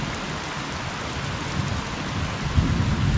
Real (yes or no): yes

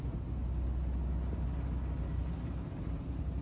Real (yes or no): yes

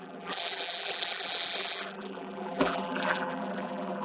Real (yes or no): no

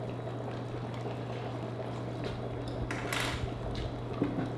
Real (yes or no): yes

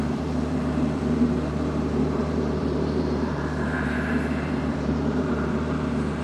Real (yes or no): no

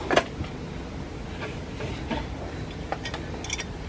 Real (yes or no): yes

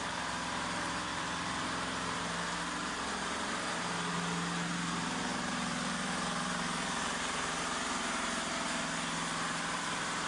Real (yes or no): no